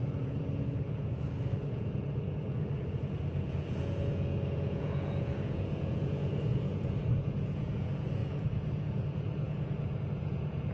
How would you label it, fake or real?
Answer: fake